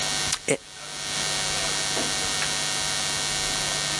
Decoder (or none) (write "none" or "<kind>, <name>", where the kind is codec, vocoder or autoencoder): none